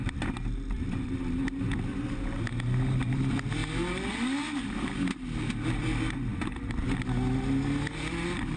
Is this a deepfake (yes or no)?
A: no